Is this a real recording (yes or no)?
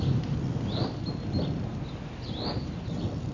yes